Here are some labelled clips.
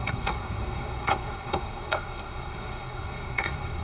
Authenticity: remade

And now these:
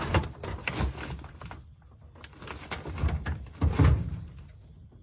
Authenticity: recorded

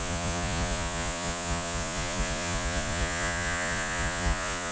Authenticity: remade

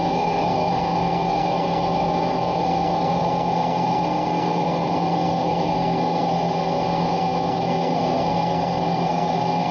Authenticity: remade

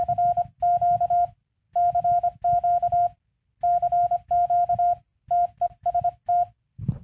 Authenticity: recorded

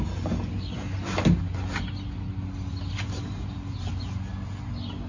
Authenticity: recorded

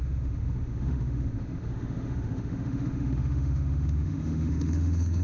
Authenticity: remade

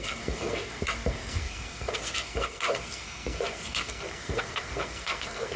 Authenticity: remade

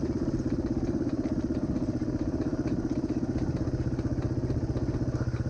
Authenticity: recorded